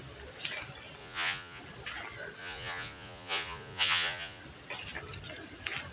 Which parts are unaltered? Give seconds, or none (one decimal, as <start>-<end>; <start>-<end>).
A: 0.0-1.0; 1.6-2.4; 4.4-5.9